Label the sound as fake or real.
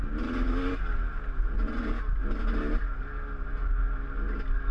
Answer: real